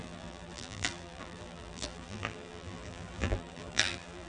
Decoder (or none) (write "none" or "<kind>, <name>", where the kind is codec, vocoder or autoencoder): vocoder, BigVGAN v2